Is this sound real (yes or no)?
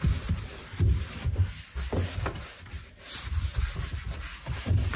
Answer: yes